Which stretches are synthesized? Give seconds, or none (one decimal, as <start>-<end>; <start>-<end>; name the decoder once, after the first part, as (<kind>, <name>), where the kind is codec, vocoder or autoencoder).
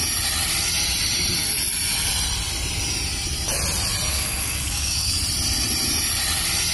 4.1-5.1 (codec, DAC)